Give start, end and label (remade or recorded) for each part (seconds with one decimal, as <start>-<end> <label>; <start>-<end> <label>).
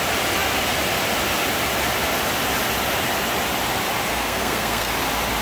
0.0-4.1 recorded; 4.1-4.9 remade; 4.9-5.4 recorded